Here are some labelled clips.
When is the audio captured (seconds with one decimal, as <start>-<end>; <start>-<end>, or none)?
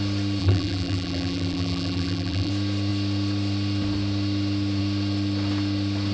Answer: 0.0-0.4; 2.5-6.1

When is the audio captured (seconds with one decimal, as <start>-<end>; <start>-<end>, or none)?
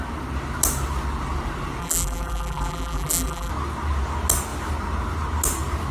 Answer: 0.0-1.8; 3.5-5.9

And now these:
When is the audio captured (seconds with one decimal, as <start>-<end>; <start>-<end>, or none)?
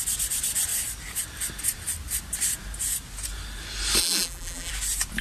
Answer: 0.0-4.0; 4.7-5.2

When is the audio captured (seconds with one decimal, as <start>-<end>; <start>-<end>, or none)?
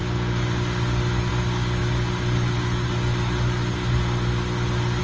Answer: 0.0-5.0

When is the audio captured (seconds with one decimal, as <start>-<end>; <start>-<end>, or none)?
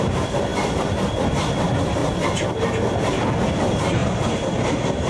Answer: 2.0-3.4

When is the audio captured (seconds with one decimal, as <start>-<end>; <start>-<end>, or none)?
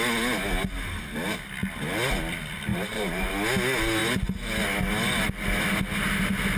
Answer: 0.0-2.7; 3.3-6.6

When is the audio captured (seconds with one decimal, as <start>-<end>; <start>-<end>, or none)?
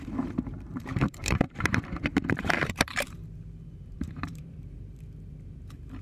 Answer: none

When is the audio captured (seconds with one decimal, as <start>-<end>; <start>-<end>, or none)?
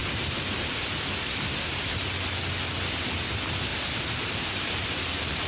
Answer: 0.0-1.5; 2.1-3.7